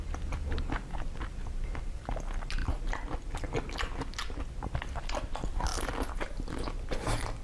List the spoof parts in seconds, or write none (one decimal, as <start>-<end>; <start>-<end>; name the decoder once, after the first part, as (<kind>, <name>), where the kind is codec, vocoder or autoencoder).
none